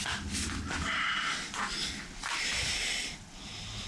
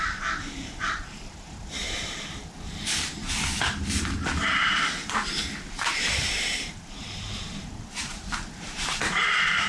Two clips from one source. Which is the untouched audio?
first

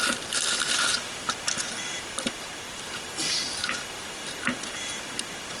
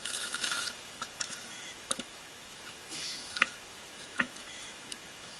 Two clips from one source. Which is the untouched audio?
first